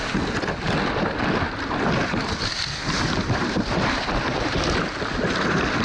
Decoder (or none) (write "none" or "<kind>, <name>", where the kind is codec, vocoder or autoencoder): none